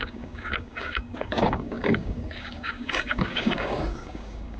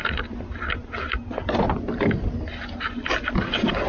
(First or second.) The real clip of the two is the second